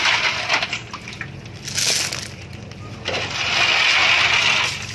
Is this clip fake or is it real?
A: real